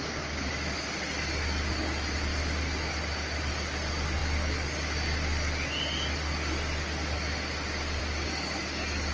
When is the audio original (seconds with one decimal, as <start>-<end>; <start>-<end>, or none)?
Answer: 0.0-9.1